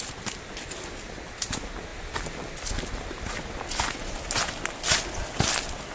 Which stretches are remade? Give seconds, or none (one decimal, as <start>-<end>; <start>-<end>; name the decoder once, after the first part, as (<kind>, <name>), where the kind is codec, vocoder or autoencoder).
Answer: none